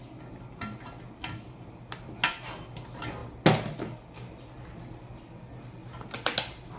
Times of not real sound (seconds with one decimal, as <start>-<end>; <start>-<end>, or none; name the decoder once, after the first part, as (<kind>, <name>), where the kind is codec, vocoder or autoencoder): none